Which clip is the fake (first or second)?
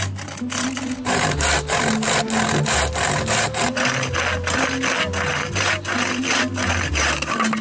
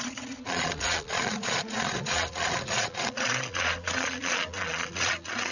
second